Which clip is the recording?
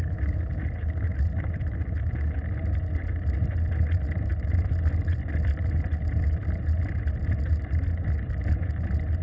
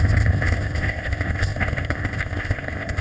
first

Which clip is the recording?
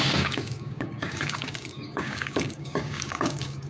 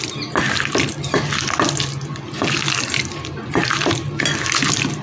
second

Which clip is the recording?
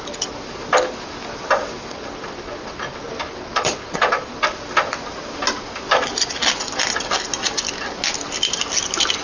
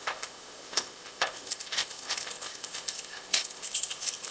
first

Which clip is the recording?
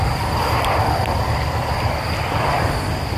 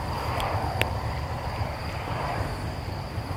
first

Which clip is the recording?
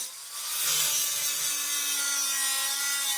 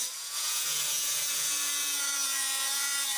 first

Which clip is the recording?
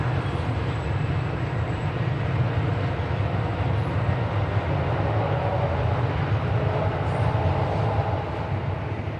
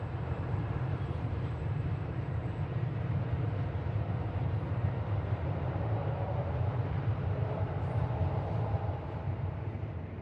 first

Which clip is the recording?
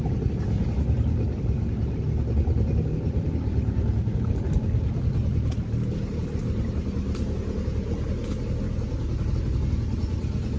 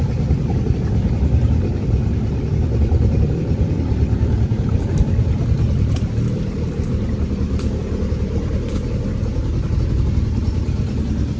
first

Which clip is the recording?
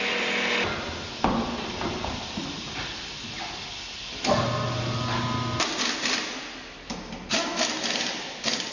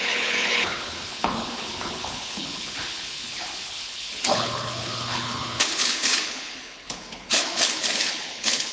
first